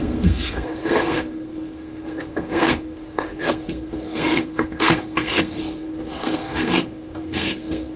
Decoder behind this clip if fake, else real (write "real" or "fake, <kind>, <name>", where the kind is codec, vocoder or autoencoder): fake, codec, SNAC